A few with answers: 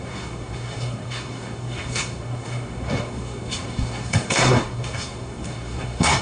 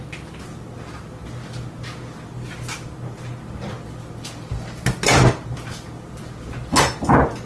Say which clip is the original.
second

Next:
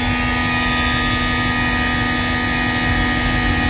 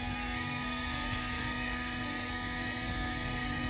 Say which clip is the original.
first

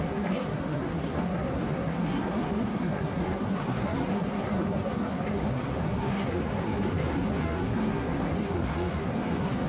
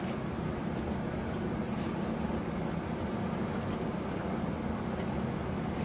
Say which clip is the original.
second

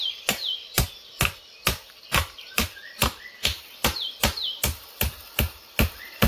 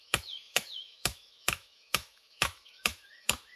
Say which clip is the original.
first